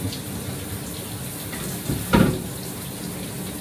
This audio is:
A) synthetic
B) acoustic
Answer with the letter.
B